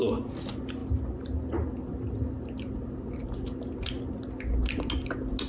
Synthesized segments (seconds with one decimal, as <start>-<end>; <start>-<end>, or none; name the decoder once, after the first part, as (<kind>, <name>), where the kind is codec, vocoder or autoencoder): none